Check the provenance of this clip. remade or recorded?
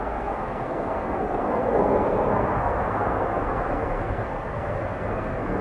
remade